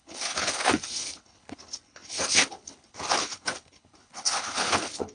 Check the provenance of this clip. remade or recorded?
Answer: remade